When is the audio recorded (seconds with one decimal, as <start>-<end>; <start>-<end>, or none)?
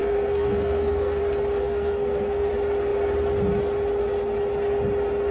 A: 1.2-1.6; 2.5-5.3